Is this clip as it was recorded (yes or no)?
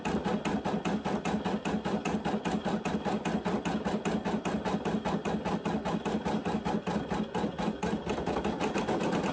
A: yes